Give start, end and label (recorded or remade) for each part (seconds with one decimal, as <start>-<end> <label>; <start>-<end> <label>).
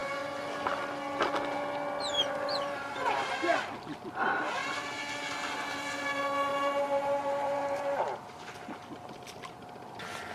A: 0.0-2.1 recorded; 2.1-3.3 remade; 3.3-4.6 recorded; 4.6-5.1 remade; 5.1-6.5 recorded; 6.5-8.0 remade; 8.0-10.3 recorded